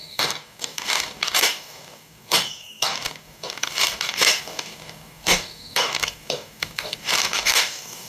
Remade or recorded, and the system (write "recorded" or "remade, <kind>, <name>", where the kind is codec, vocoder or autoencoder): remade, codec, DAC